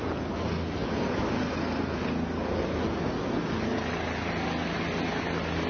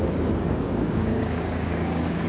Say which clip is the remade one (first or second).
second